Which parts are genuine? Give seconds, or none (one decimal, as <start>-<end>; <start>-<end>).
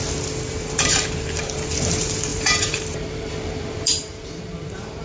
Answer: 0.0-0.5